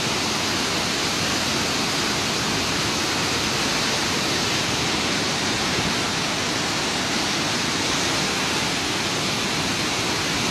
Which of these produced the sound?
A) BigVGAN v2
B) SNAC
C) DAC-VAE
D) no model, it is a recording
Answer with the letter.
D